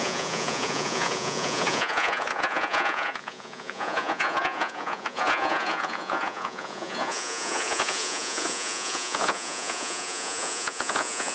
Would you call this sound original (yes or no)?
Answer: no